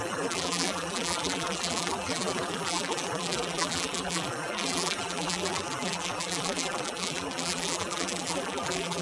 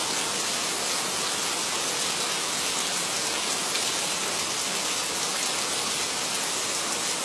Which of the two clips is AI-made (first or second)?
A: first